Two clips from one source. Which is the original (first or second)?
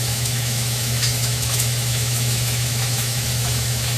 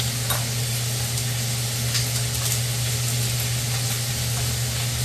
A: second